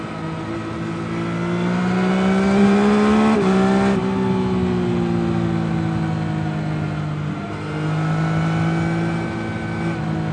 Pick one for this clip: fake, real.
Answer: real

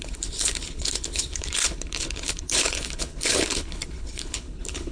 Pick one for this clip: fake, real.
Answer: fake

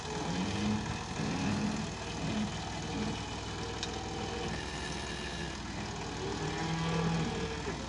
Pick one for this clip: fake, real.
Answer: real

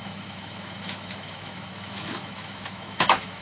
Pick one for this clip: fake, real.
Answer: fake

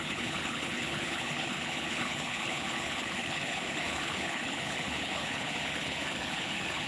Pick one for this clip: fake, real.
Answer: fake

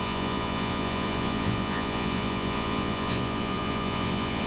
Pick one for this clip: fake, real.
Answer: fake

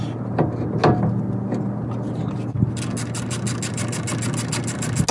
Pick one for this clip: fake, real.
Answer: real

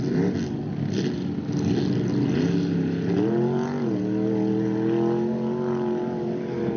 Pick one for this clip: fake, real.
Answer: real